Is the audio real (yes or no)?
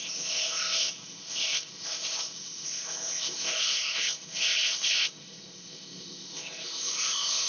no